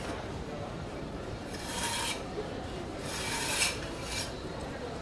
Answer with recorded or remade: remade